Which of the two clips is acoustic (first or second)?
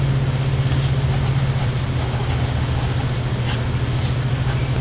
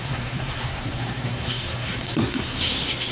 first